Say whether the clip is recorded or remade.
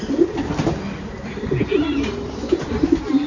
recorded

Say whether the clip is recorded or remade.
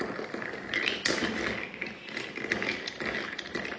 recorded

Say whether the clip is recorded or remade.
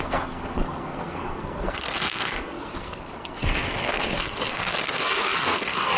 remade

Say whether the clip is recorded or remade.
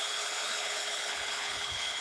remade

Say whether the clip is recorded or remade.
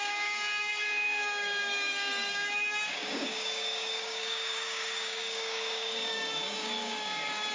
remade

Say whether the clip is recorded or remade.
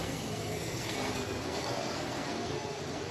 remade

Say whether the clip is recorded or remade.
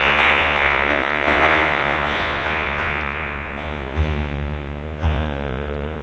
remade